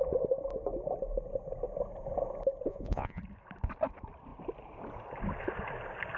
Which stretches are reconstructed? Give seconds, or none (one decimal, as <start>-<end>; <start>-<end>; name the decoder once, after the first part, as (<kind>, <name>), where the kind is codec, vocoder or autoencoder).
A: 2.7-3.2 (vocoder, Vocos)